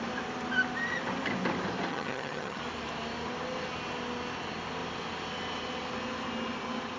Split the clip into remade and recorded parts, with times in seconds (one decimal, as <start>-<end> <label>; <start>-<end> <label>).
0.0-1.9 recorded; 1.9-2.6 remade; 2.6-7.0 recorded